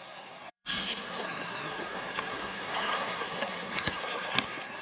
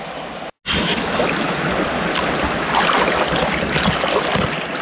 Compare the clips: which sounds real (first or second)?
second